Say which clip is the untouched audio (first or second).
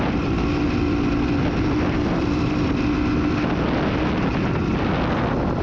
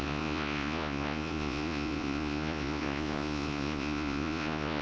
first